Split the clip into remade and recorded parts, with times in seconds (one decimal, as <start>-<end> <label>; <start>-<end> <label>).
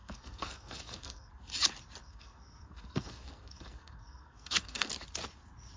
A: 0.0-1.3 remade; 1.3-2.0 recorded; 2.0-4.9 remade; 4.9-5.8 recorded